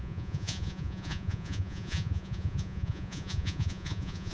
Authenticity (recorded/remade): remade